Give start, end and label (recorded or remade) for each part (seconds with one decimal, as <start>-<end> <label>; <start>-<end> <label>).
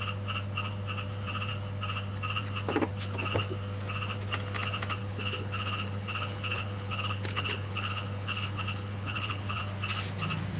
0.0-5.0 recorded; 5.0-9.6 remade; 9.6-10.6 recorded